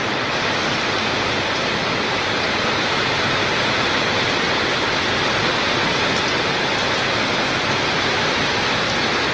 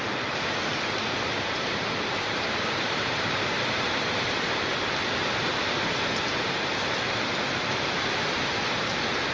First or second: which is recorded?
first